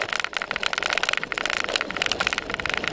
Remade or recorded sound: recorded